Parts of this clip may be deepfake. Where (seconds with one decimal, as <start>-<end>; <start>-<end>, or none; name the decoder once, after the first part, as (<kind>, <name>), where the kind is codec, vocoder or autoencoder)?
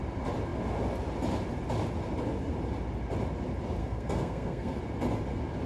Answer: 3.8-4.8 (codec, SNAC)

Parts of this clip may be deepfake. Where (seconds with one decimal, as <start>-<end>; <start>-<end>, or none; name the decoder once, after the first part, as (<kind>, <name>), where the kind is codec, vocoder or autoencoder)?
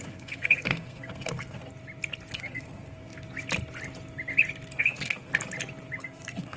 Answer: 0.0-1.6 (codec, SNAC); 2.3-3.1; 4.8-5.3; 6.0-6.6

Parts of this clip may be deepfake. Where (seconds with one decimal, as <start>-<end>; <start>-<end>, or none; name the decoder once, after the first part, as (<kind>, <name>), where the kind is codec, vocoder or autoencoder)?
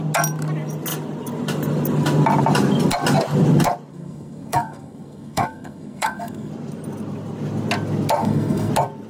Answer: 3.9-6.5 (codec, SNAC); 8.2-8.7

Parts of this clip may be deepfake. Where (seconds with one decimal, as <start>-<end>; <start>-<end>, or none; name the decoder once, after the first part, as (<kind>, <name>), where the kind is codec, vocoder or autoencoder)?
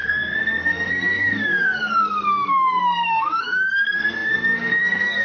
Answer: 0.0-5.2 (codec, SNAC)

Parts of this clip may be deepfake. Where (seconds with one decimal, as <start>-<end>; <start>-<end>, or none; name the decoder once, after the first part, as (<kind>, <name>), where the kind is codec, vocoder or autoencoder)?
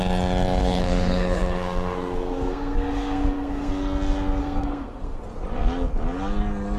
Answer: 0.6-3.7 (codec, SNAC); 4.4-5.2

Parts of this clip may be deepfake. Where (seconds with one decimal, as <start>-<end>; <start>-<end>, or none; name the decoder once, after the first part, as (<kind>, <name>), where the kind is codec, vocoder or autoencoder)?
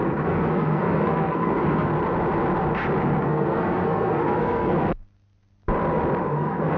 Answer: 0.0-1.9 (codec, SNAC); 3.2-5.0; 6.2-6.8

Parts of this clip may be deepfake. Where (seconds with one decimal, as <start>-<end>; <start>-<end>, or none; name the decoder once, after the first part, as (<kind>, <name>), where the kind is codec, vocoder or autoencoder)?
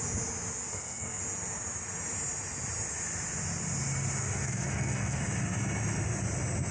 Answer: 0.7-1.2 (codec, SNAC); 4.2-5.2